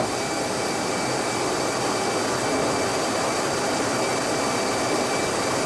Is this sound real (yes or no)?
no